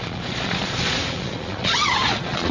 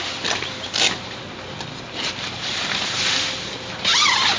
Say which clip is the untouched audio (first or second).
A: second